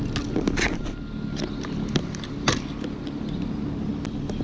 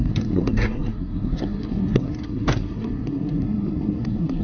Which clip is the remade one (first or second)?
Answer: second